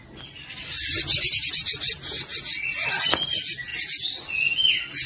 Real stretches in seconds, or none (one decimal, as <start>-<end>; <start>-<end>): 0.0-5.1